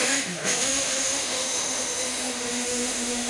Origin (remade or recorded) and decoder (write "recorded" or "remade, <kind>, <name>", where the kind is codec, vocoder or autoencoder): remade, autoencoder, DAC-VAE